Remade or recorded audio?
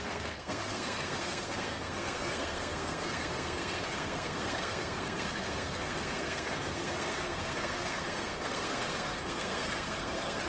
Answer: remade